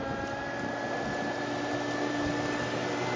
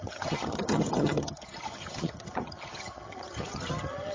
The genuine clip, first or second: first